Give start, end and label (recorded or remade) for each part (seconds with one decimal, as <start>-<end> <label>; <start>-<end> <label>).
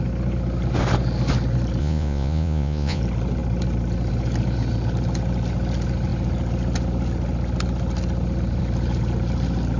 0.0-1.8 recorded; 1.8-3.0 remade; 3.0-9.8 recorded